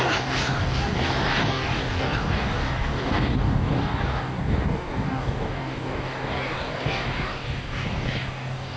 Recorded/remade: remade